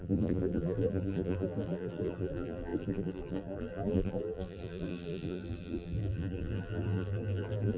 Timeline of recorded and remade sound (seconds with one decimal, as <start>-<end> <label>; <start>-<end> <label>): 0.0-7.8 remade